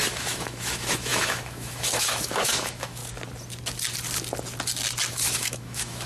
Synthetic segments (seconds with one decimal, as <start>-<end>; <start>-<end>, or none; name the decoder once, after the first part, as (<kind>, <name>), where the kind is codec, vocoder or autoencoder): 0.0-3.0 (autoencoder, DAC-VAE); 5.1-6.1